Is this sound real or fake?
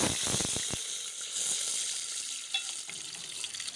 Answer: real